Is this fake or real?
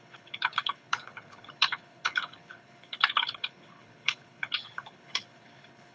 fake